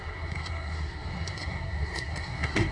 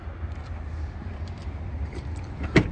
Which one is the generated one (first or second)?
first